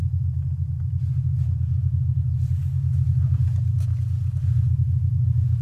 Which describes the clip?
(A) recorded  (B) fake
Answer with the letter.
A